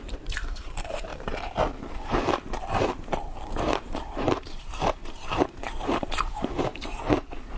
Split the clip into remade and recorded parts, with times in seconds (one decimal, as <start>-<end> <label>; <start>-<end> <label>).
0.0-1.1 remade; 1.1-2.8 recorded; 2.8-6.7 remade; 6.7-7.6 recorded